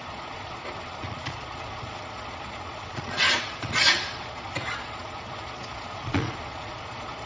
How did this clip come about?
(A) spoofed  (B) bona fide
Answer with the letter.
A